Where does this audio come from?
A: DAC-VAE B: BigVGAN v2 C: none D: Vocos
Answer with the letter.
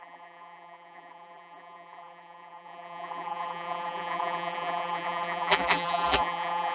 B